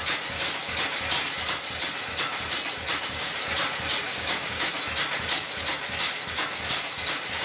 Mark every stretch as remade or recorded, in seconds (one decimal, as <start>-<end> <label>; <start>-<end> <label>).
0.0-4.1 recorded; 4.1-4.7 remade; 4.7-7.4 recorded